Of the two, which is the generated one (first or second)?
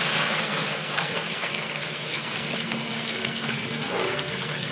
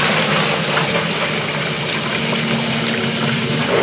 first